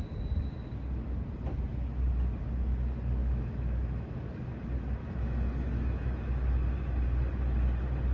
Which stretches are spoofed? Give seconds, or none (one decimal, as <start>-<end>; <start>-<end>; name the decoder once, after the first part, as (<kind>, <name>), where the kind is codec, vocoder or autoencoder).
3.2-4.2 (autoencoder, DAC-VAE); 5.0-6.3